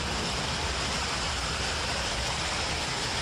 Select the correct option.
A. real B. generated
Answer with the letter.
A